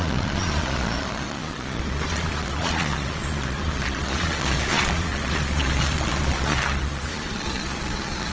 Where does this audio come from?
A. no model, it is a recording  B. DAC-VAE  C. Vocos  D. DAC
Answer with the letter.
C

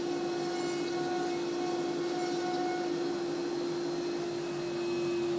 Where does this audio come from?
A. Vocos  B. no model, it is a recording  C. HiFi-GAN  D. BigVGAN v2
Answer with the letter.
B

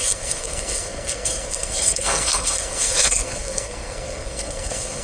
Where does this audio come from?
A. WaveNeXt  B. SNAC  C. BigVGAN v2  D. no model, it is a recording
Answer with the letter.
B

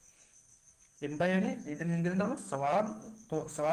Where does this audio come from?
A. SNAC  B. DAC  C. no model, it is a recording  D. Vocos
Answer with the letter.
A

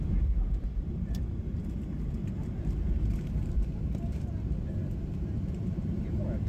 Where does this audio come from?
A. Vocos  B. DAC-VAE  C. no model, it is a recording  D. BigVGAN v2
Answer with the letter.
D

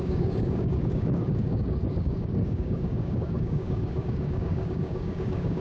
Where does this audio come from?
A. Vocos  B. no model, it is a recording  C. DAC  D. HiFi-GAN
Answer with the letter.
C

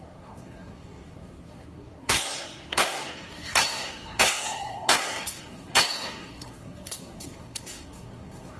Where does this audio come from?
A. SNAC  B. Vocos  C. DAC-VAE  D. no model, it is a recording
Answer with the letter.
A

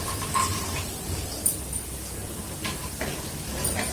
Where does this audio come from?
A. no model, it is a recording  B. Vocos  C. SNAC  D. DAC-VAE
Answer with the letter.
A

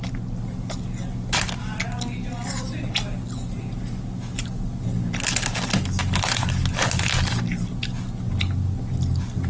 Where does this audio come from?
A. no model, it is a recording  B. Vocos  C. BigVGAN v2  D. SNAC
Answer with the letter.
A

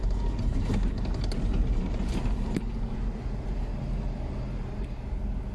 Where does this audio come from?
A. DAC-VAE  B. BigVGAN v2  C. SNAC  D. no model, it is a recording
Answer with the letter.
D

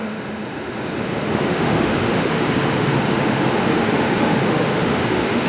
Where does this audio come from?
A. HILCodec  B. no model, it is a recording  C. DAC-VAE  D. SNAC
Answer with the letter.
C